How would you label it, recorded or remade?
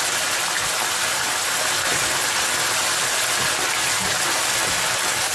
recorded